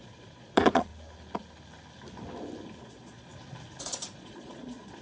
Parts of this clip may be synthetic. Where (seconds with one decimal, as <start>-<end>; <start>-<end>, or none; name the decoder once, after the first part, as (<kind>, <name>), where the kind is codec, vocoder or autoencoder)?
0.0-0.9 (vocoder, Vocos); 2.8-3.3; 3.8-5.0